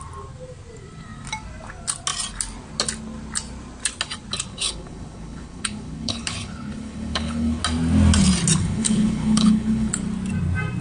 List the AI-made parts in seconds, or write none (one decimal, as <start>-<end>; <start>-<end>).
4.5-7.6; 8.6-9.9